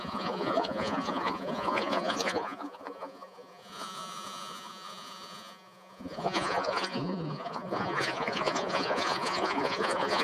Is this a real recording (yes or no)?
no